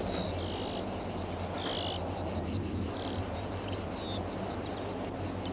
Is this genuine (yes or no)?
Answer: yes